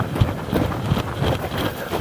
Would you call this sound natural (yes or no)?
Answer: no